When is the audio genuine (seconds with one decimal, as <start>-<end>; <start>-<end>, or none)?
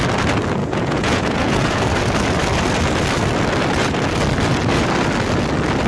0.0-0.6; 1.8-5.9